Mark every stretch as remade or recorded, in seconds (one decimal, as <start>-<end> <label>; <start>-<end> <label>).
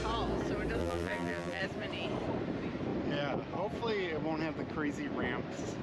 0.0-0.8 recorded; 0.8-1.6 remade; 1.6-5.8 recorded